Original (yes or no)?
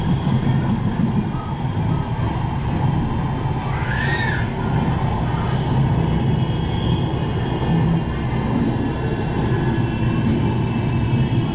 yes